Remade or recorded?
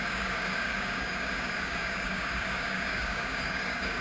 remade